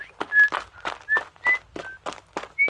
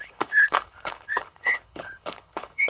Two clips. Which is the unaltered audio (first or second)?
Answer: first